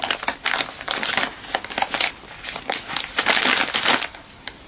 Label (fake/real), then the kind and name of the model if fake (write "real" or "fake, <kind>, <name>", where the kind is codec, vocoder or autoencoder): real